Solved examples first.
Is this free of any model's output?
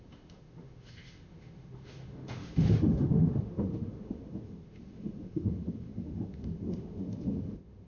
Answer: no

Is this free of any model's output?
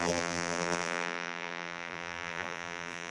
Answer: no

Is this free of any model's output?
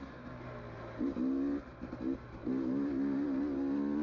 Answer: yes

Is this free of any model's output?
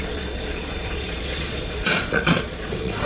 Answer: no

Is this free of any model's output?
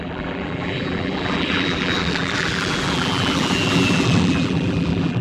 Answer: no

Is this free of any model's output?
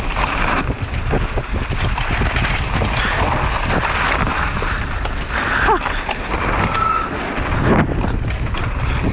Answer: yes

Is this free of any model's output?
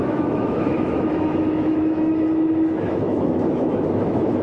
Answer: no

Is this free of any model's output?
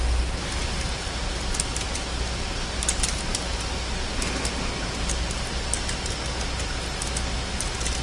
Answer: yes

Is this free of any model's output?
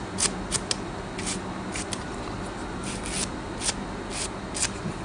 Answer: yes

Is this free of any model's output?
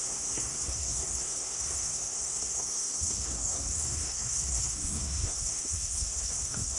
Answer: no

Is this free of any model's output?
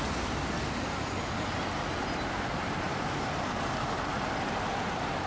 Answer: yes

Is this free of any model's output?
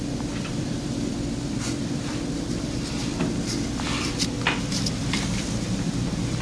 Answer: no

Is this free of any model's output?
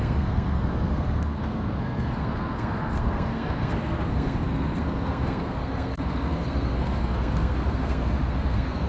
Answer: no